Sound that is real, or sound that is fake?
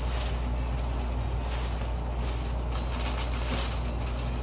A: real